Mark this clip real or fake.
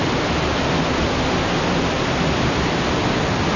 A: real